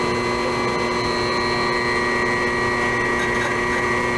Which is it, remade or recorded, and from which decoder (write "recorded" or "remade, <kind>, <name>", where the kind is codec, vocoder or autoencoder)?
recorded